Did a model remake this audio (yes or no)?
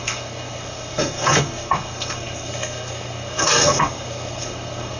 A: yes